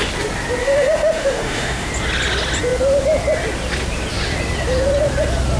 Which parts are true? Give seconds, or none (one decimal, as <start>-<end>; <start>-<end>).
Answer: 0.0-0.6; 1.9-5.6